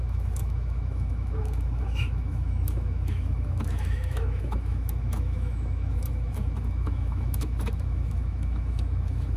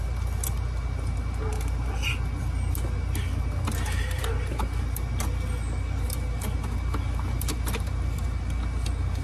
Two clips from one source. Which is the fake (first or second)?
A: first